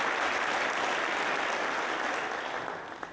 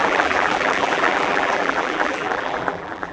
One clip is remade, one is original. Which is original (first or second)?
first